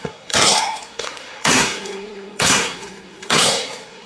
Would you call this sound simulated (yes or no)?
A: yes